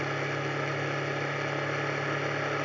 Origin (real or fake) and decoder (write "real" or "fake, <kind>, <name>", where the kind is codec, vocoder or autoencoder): real